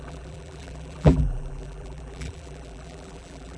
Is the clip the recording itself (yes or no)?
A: no